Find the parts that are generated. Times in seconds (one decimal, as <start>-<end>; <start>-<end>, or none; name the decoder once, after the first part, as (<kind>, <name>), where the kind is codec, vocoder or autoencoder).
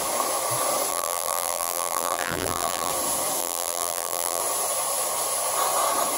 0.9-2.9 (vocoder, BigVGAN v2); 3.4-4.4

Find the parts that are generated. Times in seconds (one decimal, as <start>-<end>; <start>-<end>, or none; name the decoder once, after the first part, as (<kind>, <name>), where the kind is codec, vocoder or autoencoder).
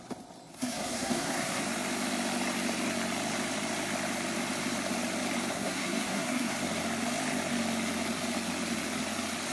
0.5-1.6 (codec, SNAC); 5.5-6.5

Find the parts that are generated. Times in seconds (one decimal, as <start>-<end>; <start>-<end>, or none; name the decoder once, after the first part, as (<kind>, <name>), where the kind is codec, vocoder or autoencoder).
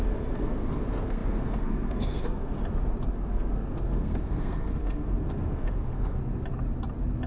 0.0-2.6 (codec, SNAC); 3.1-6.2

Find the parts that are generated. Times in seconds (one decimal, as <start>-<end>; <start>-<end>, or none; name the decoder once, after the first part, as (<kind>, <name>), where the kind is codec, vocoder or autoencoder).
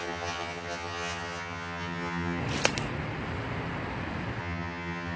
0.0-2.4 (vocoder, HiFi-GAN); 4.4-5.2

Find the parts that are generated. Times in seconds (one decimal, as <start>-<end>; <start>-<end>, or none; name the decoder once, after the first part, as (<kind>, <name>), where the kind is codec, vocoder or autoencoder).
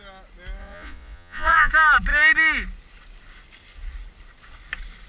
0.6-1.7 (vocoder, Vocos)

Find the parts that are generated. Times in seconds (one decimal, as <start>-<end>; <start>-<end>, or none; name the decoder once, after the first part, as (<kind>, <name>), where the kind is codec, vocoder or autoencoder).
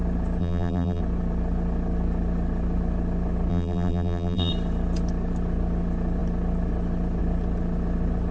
0.4-1.0 (vocoder, BigVGAN v2); 3.5-4.5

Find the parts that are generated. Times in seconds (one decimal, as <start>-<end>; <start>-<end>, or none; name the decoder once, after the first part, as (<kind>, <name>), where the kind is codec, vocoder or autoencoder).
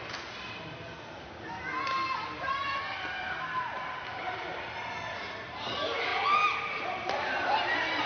none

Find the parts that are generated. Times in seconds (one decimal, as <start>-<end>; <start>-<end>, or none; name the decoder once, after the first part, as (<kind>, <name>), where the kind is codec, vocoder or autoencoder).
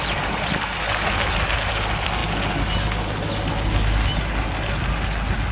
none